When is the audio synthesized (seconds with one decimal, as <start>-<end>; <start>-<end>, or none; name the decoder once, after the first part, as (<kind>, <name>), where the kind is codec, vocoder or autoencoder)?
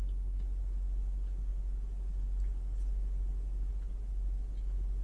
none